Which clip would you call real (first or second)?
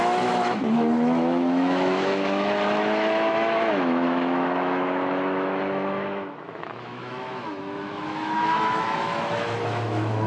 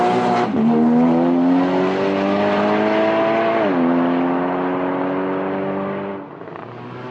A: second